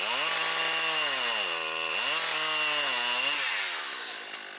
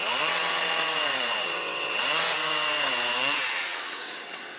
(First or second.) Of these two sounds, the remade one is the second